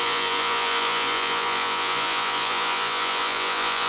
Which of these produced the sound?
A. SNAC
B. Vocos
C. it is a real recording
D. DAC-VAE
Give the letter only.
B